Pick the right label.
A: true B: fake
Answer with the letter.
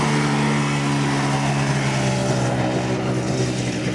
A